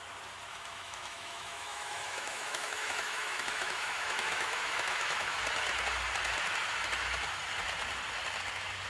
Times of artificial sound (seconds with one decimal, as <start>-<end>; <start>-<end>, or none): 0.5-5.4